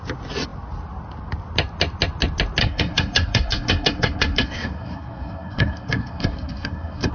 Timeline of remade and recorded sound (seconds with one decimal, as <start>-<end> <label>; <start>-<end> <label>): 0.0-2.6 recorded; 2.6-7.1 remade